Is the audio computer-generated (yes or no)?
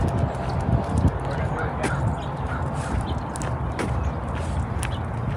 no